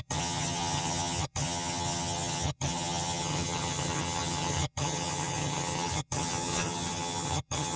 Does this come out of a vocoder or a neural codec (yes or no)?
yes